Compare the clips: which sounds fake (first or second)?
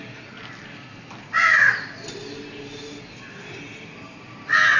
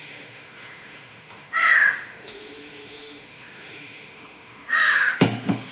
second